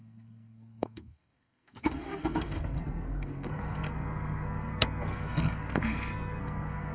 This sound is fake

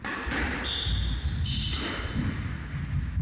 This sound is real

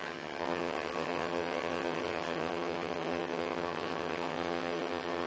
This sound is fake